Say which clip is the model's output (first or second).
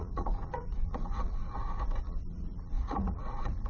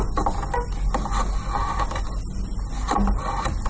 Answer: first